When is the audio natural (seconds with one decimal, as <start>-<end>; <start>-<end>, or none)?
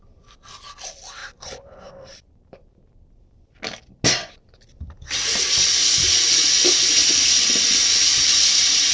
0.0-8.9